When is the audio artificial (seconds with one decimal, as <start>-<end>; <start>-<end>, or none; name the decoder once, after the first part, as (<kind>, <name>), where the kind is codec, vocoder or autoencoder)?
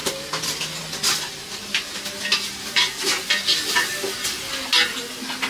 none